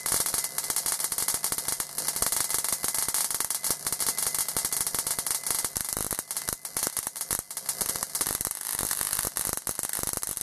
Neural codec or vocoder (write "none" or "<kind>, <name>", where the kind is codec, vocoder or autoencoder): none